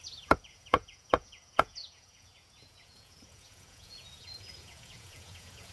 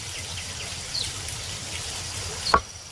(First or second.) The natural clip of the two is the second